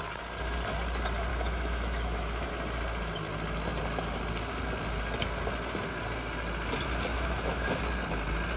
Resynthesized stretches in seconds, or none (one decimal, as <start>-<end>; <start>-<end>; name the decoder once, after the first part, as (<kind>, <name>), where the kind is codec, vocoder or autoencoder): 1.3-2.5 (autoencoder, DAC-VAE); 7.1-7.8